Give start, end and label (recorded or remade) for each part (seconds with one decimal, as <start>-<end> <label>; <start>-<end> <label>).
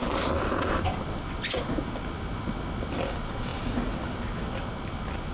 0.0-5.3 recorded